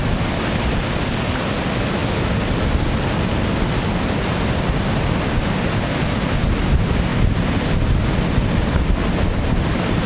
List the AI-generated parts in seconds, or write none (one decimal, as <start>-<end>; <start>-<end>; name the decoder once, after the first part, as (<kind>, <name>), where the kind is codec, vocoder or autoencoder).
none